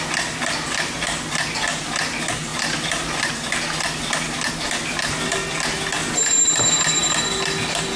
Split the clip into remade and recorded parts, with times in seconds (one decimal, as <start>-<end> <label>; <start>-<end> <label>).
0.0-2.5 recorded; 2.5-4.5 remade; 4.5-6.0 recorded; 6.0-6.6 remade; 6.6-8.0 recorded